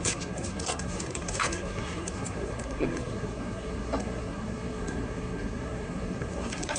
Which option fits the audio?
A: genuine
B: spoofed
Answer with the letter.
B